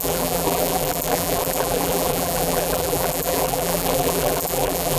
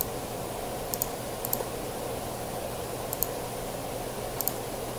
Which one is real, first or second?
second